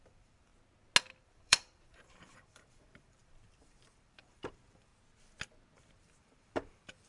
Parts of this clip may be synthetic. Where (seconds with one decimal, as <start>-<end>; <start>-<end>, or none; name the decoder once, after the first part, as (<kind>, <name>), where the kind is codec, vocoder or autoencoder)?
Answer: 0.0-0.5 (vocoder, BigVGAN v2); 1.2-4.9; 5.8-7.1